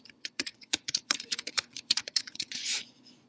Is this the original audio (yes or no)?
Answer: no